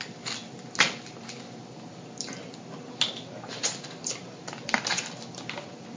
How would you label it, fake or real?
real